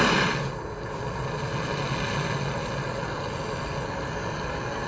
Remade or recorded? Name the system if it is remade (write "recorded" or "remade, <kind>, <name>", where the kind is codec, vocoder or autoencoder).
recorded